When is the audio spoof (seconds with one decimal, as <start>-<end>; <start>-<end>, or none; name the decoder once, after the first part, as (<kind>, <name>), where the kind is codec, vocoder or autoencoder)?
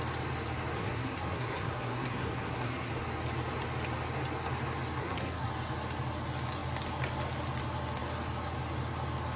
0.8-2.9 (codec, SNAC); 5.0-5.5